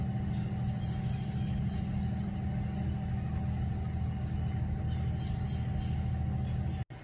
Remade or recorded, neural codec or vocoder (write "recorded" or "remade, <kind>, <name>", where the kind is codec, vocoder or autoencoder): recorded